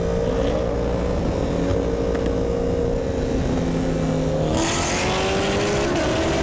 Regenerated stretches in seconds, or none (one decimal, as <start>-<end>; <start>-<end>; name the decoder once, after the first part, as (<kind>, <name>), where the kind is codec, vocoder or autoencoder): none